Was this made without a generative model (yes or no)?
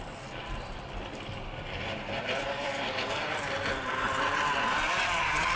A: no